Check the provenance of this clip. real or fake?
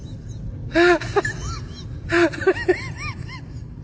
real